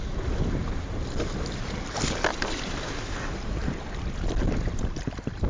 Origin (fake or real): real